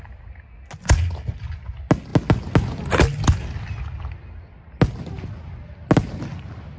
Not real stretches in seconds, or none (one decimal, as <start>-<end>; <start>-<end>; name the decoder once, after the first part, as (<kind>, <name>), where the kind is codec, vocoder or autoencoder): none